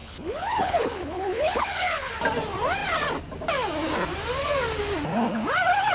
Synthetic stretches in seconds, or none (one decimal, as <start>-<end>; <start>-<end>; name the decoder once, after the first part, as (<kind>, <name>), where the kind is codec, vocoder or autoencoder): 0.0-2.1 (codec, HILCodec)